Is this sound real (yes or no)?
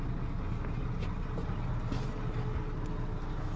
yes